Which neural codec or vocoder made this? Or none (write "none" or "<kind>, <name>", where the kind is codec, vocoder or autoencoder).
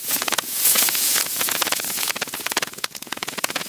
vocoder, Vocos